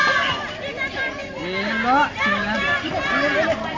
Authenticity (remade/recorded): recorded